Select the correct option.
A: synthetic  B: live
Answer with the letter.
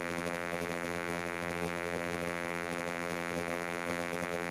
A